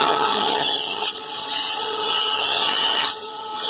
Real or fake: fake